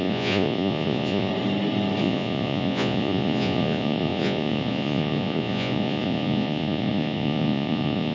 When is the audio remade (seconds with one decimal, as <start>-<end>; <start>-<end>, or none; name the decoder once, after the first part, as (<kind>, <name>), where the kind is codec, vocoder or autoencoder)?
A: 0.0-1.3 (vocoder, Vocos); 2.0-8.1